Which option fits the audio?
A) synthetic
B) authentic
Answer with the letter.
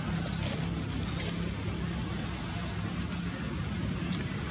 B